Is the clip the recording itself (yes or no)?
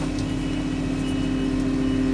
yes